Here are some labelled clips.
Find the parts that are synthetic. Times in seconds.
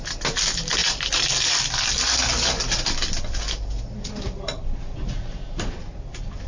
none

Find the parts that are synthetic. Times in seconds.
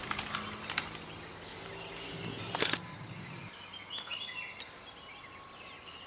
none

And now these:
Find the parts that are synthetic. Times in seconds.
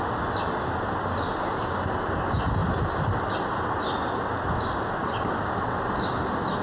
none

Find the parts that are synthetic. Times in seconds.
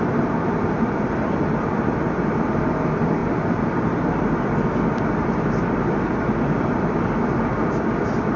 0.0-8.4